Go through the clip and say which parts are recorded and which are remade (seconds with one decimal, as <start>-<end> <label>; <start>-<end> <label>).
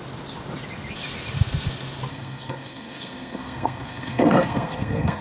0.0-2.1 recorded; 2.1-5.2 remade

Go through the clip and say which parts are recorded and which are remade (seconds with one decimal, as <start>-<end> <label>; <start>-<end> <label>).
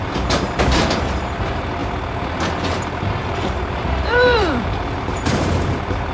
0.0-1.8 remade; 1.8-2.8 recorded; 2.8-6.1 remade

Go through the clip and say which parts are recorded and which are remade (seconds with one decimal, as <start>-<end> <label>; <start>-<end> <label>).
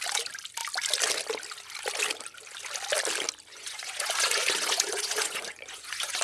0.0-3.5 recorded; 3.5-6.2 remade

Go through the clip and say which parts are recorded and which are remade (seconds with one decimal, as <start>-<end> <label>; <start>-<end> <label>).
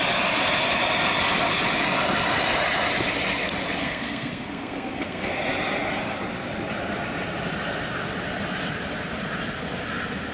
0.0-3.8 recorded; 3.8-5.3 remade; 5.3-10.3 recorded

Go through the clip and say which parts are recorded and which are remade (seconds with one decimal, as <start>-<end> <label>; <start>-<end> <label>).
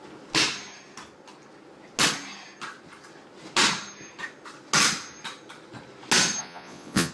0.0-6.4 recorded; 6.4-7.1 remade